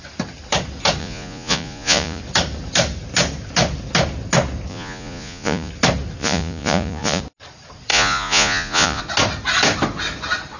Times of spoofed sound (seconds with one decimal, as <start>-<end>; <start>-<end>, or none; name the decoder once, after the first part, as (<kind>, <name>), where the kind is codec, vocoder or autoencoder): 1.0-2.2 (vocoder, Vocos); 4.7-5.7; 6.2-7.2; 7.9-9.0